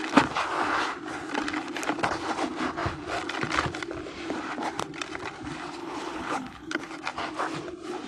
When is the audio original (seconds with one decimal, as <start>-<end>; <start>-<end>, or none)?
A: 0.0-5.8; 6.9-8.1